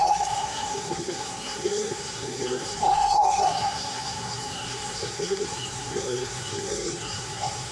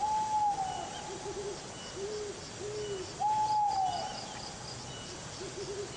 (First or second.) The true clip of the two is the second